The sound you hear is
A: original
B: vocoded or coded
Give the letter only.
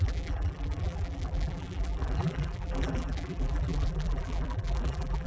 B